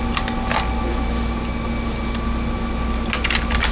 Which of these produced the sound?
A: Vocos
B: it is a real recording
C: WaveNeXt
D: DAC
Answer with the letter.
B